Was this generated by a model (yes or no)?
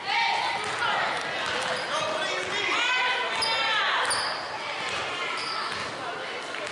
no